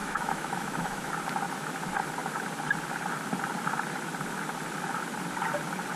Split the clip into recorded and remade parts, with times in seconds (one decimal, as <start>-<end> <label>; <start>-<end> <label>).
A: 0.0-1.1 remade; 1.1-6.0 recorded